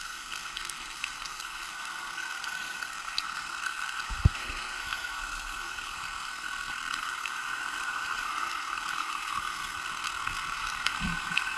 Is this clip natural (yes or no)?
no